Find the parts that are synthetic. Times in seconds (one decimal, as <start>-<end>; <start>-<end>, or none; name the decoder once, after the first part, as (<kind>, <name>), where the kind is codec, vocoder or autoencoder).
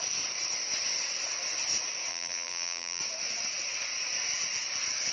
2.1-3.0 (vocoder, BigVGAN v2)